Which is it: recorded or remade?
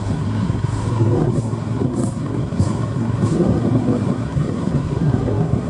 remade